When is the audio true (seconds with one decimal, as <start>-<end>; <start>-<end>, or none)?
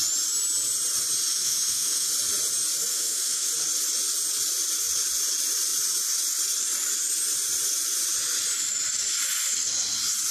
0.0-1.3; 2.1-2.9; 3.5-10.3